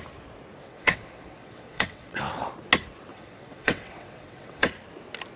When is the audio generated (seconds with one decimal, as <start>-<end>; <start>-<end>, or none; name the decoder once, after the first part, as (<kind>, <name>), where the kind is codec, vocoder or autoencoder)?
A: 0.7-2.2 (vocoder, WaveNeXt); 3.1-4.7